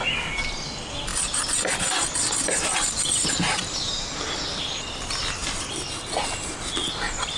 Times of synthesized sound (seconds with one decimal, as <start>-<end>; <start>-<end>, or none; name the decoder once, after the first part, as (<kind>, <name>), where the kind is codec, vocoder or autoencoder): none